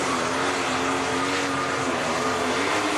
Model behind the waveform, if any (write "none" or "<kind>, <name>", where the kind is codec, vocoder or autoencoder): none